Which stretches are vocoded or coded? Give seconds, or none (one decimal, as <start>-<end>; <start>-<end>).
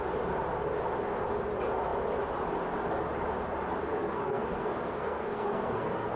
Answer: 3.8-6.2